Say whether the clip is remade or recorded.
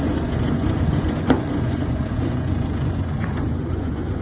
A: remade